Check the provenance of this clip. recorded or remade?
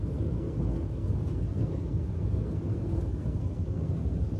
remade